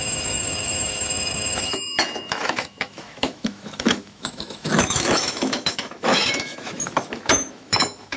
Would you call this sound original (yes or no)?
no